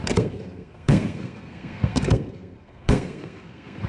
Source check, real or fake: fake